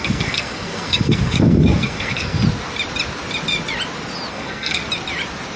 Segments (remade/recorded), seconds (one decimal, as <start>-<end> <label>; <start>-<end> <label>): 0.0-2.4 remade; 2.4-4.3 recorded; 4.3-4.8 remade; 4.8-5.6 recorded

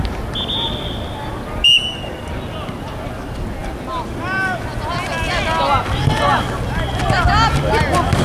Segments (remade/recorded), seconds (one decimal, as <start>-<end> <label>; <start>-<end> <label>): 0.0-8.2 recorded

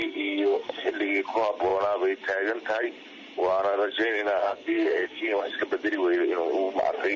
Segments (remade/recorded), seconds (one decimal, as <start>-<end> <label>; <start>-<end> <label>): 0.0-0.9 remade; 0.9-4.4 recorded; 4.4-5.2 remade; 5.2-7.2 recorded

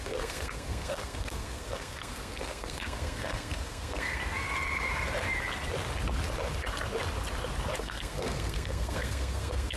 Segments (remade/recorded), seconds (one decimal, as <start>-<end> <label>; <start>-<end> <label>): 0.0-4.2 remade; 4.2-7.8 recorded; 7.8-9.8 remade

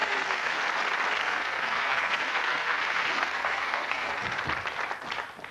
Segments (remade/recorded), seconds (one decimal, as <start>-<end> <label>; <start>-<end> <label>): 0.0-0.6 remade; 0.6-1.2 recorded; 1.2-4.4 remade; 4.4-5.5 recorded

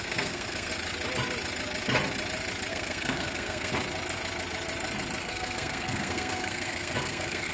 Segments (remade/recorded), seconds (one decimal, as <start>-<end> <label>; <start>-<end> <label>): 0.0-0.7 remade; 0.7-2.7 recorded; 2.7-3.7 remade; 3.7-5.2 recorded; 5.2-7.5 remade

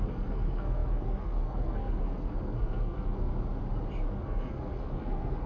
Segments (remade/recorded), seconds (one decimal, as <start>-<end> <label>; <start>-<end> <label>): 0.0-3.3 remade; 3.3-4.1 recorded; 4.1-5.5 remade